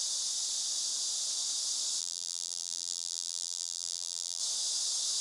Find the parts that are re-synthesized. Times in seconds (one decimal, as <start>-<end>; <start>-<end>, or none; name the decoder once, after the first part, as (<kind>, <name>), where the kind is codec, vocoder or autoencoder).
2.0-4.4 (vocoder, BigVGAN v2)